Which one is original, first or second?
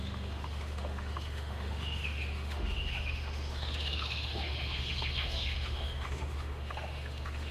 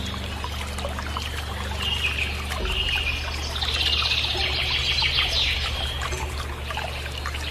second